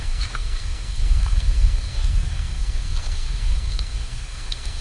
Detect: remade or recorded remade